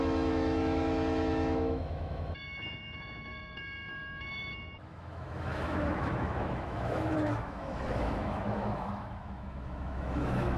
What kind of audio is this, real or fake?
fake